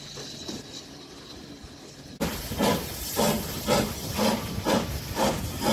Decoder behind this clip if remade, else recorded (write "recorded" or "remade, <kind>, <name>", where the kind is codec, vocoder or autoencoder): recorded